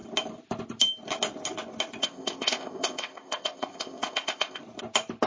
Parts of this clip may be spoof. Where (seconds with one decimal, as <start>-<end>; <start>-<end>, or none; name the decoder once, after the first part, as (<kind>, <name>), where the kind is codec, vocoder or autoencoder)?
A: 2.0-4.6 (codec, ZipCodec)